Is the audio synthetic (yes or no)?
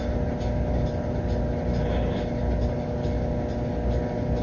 no